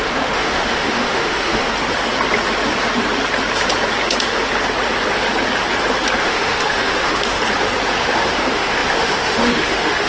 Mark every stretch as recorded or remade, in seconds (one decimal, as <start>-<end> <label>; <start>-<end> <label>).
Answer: 0.0-1.7 remade; 1.7-6.2 recorded; 6.2-7.4 remade; 7.4-8.0 recorded; 8.0-10.1 remade